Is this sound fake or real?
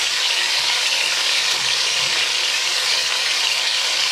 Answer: fake